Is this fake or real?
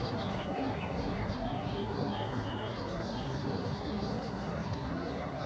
fake